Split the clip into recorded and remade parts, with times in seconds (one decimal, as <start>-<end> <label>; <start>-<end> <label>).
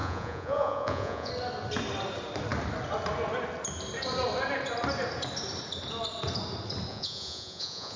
0.0-1.3 remade; 1.3-6.9 recorded; 6.9-8.0 remade